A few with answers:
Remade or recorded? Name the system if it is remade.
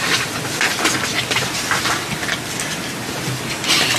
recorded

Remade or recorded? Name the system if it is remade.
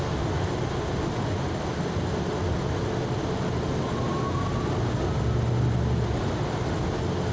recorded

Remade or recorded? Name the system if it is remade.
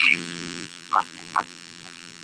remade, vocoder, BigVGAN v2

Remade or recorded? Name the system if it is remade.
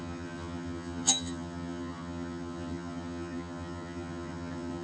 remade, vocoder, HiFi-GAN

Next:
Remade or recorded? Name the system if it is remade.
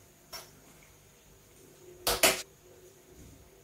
recorded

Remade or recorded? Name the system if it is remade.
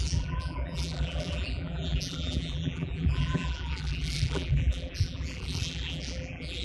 remade, vocoder, BigVGAN v2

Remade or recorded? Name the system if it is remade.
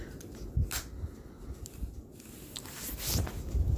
recorded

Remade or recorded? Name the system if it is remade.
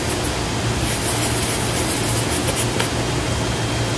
recorded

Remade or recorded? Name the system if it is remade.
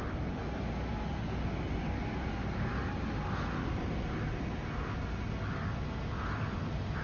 recorded